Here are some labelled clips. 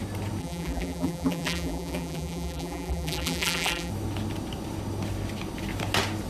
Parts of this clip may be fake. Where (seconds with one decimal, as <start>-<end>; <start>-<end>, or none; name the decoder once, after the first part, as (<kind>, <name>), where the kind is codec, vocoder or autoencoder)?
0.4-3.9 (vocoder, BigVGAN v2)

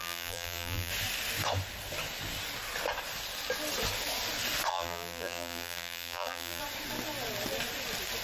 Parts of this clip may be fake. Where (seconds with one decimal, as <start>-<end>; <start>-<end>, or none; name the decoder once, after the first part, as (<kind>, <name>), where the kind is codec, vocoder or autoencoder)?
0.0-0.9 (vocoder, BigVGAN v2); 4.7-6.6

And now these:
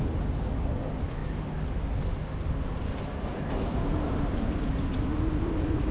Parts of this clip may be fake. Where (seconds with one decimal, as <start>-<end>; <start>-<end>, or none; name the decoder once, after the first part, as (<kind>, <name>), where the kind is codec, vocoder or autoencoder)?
none

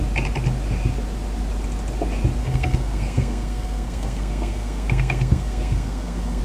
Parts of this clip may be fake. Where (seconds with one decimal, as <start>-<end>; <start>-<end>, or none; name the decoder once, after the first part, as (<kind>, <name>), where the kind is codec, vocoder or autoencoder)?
2.4-6.4 (codec, SNAC)

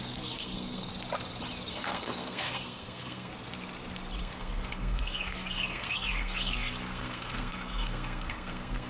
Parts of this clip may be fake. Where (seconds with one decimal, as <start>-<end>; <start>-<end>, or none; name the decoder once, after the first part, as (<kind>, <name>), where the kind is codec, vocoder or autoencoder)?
0.0-0.9 (codec, SNAC); 1.7-3.3; 4.2-8.9